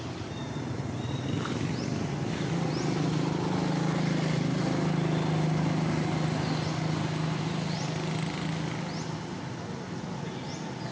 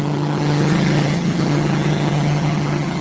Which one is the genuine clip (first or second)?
first